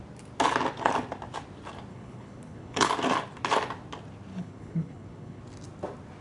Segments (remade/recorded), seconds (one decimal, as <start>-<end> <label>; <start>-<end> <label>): 0.0-1.9 recorded; 1.9-2.9 remade; 2.9-4.3 recorded; 4.3-5.4 remade; 5.4-6.2 recorded